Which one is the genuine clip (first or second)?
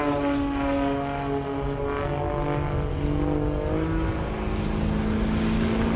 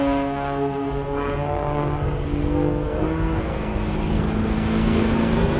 first